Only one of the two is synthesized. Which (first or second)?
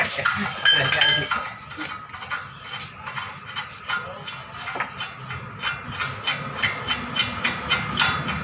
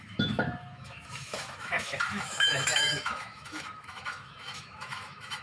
second